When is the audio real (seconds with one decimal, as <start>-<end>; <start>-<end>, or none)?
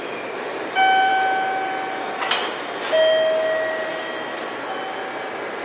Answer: 0.0-5.6